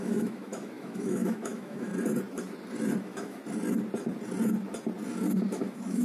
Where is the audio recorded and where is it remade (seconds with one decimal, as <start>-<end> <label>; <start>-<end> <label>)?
0.0-1.9 remade; 1.9-3.0 recorded; 3.0-3.4 remade; 3.4-5.5 recorded; 5.5-6.0 remade